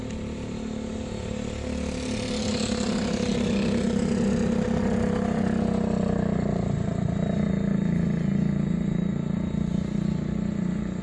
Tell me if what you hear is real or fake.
real